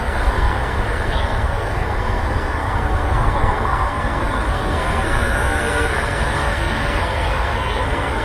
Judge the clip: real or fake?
fake